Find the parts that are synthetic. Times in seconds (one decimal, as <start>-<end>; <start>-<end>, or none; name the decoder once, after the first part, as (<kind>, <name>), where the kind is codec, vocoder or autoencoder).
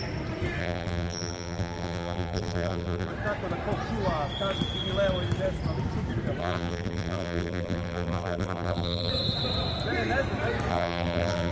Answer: 0.6-3.1 (vocoder, BigVGAN v2); 6.4-9.1; 10.7-11.5